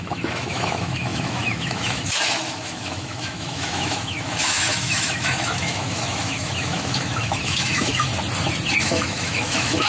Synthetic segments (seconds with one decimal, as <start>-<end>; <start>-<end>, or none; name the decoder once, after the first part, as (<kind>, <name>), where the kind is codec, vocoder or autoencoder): 0.0-8.1 (autoencoder, DAC-VAE); 8.8-9.9